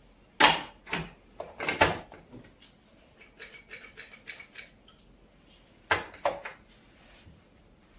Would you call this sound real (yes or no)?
yes